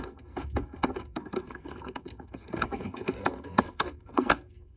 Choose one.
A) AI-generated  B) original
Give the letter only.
A